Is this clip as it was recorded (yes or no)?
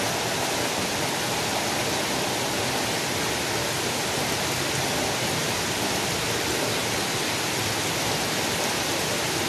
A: yes